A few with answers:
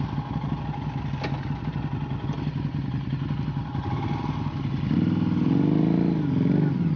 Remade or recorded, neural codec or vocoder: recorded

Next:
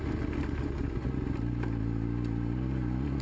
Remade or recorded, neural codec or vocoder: recorded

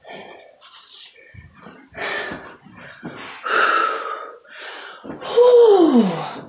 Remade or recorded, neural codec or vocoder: recorded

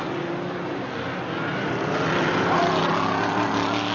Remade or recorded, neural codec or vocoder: recorded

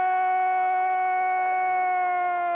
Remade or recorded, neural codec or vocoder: recorded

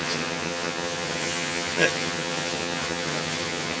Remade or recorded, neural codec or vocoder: remade, vocoder, HiFi-GAN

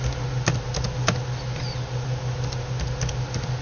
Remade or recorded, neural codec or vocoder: recorded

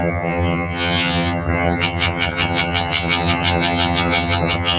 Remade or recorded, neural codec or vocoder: remade, vocoder, HiFi-GAN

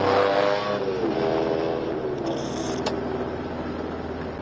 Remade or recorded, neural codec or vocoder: recorded